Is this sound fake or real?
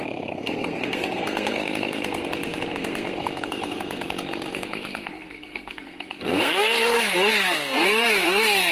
fake